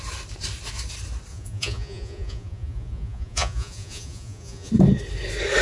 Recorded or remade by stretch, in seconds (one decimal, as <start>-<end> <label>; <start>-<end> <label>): 0.0-1.3 recorded; 1.3-4.7 remade; 4.7-5.6 recorded